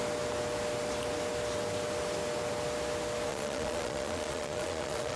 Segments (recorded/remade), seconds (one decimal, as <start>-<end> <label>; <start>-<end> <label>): 0.0-3.3 recorded; 3.3-5.2 remade